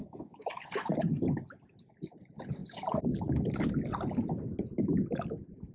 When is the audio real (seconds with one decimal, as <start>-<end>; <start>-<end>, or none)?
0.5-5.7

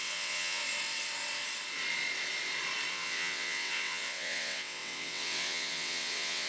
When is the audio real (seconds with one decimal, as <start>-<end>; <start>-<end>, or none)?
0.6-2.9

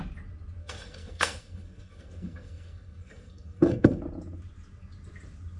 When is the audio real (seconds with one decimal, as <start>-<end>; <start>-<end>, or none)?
0.0-0.6; 4.0-5.6

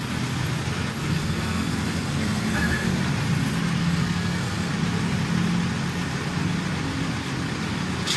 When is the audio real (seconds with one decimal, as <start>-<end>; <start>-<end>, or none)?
0.0-1.0; 3.0-3.8; 4.7-8.2